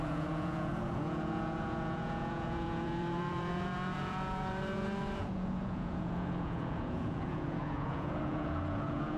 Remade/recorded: remade